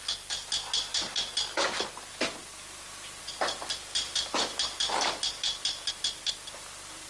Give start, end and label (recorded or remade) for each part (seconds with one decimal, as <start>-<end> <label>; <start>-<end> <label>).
0.0-3.9 recorded; 3.9-5.9 remade; 5.9-7.1 recorded